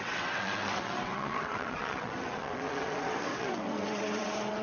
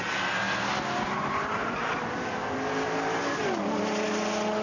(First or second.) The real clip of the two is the second